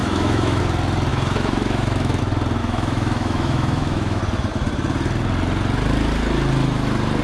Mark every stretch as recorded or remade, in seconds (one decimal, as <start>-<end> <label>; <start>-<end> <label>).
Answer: 0.0-0.6 remade; 0.6-1.1 recorded; 1.1-2.2 remade; 2.2-2.6 recorded; 2.6-4.2 remade; 4.2-7.2 recorded

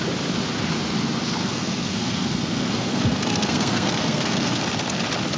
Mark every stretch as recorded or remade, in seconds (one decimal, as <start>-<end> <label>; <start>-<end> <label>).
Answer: 0.0-1.4 recorded; 1.4-4.6 remade; 4.6-5.4 recorded

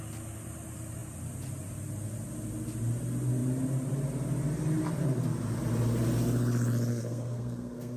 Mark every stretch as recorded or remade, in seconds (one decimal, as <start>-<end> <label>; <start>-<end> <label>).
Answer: 0.0-6.9 recorded; 6.9-8.0 remade

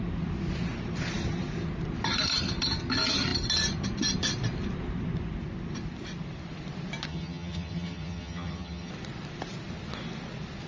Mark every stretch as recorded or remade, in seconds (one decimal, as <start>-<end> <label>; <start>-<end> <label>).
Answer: 0.0-7.1 recorded; 7.1-8.9 remade; 8.9-10.7 recorded

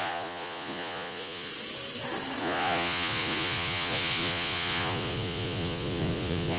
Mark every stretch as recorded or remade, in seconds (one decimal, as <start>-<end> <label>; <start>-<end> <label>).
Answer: 0.0-1.5 remade; 1.5-2.4 recorded; 2.4-6.6 remade